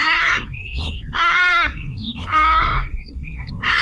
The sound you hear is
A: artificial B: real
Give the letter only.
A